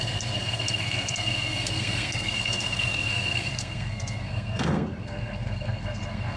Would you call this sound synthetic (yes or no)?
yes